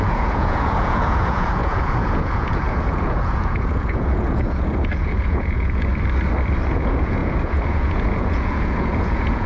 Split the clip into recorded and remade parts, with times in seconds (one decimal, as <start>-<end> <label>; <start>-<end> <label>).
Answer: 0.0-5.9 remade; 5.9-6.7 recorded; 6.7-9.5 remade